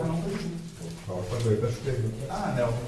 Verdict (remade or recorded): recorded